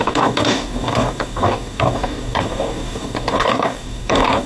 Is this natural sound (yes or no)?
no